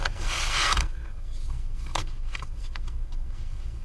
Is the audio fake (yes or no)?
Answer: yes